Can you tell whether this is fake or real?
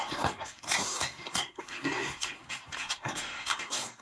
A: fake